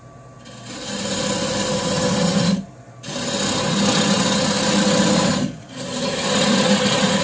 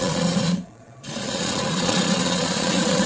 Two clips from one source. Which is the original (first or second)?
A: first